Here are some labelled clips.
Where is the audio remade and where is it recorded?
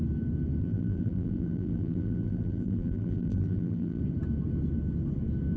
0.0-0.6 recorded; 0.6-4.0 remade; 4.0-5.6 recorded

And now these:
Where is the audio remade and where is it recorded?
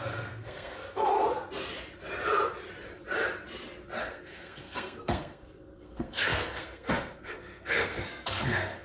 0.0-1.1 remade; 1.1-4.0 recorded; 4.0-8.8 remade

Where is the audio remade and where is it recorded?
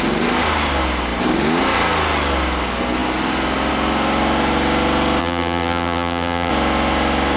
0.0-5.2 recorded; 5.2-6.5 remade; 6.5-7.4 recorded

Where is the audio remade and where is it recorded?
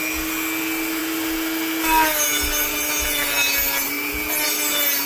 0.0-5.1 recorded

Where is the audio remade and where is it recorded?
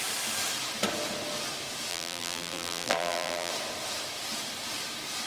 0.0-1.9 recorded; 1.9-3.5 remade; 3.5-5.3 recorded